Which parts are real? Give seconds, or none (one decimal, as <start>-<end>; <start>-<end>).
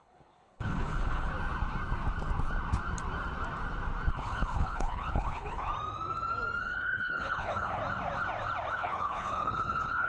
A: 1.3-4.1; 5.7-6.6; 7.8-8.7